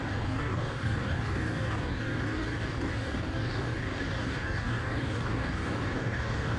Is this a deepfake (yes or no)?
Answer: yes